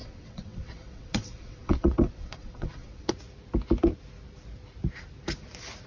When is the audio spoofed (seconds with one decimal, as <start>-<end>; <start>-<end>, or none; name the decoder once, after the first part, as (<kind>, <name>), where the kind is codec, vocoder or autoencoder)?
0.0-3.1 (vocoder, WaveNeXt)